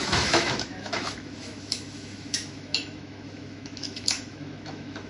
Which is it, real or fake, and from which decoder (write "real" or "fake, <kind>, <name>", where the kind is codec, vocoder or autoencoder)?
fake, autoencoder, DAC-VAE